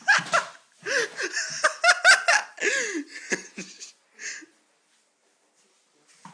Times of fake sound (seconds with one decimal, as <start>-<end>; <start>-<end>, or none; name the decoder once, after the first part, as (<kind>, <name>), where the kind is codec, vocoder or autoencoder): none